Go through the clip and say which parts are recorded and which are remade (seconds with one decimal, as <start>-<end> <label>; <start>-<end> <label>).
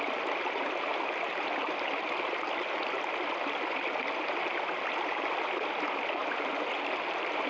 0.0-7.5 recorded